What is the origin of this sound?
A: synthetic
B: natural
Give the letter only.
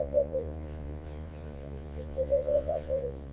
A